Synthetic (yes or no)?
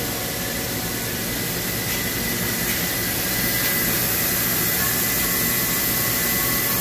no